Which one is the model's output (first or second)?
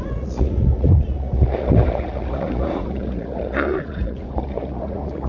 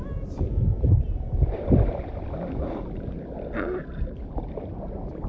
first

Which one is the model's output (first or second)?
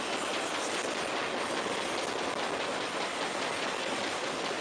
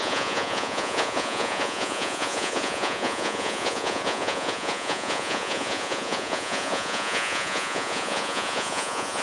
second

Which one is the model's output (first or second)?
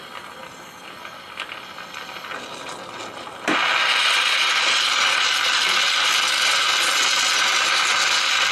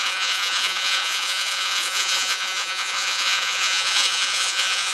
second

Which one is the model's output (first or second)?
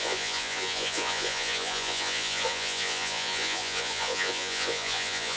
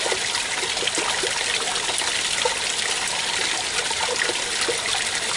first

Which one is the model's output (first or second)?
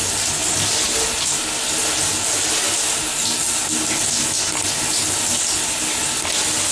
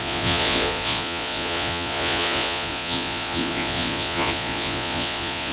second